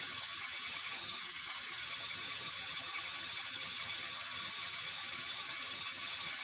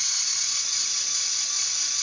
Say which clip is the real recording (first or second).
second